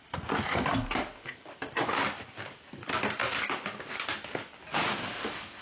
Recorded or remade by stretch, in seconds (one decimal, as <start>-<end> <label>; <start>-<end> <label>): 0.0-5.6 recorded